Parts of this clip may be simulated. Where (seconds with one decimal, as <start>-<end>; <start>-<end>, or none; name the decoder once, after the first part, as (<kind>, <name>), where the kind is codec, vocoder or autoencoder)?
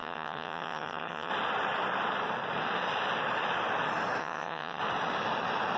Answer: 0.0-1.3 (vocoder, HiFi-GAN); 4.2-4.8